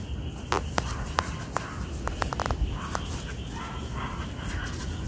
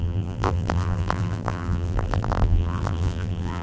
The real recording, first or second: first